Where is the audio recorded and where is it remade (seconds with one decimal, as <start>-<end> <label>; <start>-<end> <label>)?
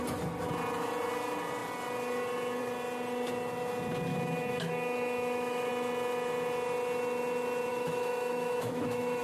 0.0-4.1 recorded; 4.1-5.7 remade; 5.7-7.7 recorded; 7.7-9.2 remade